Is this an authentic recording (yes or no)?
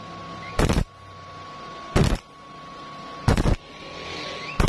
yes